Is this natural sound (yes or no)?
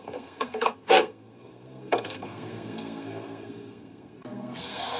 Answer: no